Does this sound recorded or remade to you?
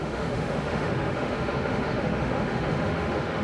remade